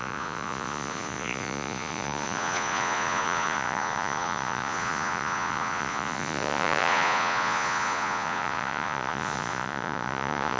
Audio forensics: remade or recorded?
remade